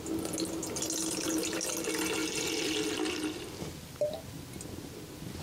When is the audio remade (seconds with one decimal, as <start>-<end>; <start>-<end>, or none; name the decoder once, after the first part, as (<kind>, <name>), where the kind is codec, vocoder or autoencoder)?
2.2-2.9 (vocoder, BigVGAN v2)